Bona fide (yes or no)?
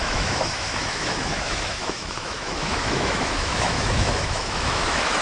no